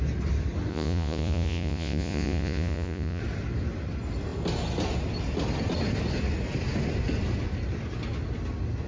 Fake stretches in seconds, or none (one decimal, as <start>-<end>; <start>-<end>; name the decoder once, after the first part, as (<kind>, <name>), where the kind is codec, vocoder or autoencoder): 0.7-3.2 (vocoder, Vocos)